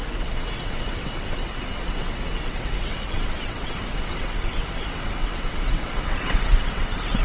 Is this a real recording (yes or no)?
no